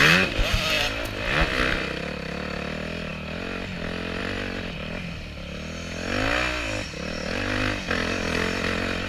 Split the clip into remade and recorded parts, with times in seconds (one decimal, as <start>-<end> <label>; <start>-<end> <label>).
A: 0.0-9.1 recorded